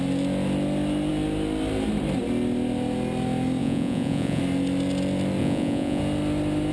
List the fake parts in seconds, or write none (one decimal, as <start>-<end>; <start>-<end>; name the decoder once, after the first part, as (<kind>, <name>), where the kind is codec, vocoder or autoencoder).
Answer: 3.6-4.4 (vocoder, Vocos); 5.4-6.0